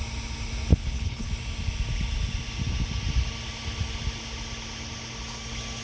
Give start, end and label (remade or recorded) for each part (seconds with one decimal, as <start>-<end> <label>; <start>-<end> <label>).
0.0-0.7 recorded; 0.7-1.3 remade; 1.3-5.8 recorded